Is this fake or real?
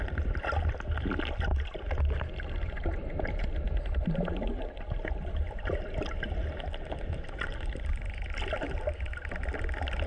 real